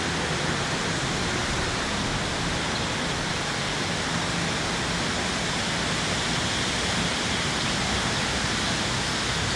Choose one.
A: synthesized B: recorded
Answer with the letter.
B